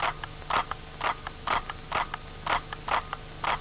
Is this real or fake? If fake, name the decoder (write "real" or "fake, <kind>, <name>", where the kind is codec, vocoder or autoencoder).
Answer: real